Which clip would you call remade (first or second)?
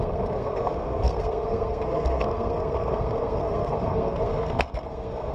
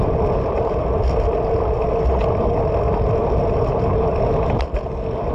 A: first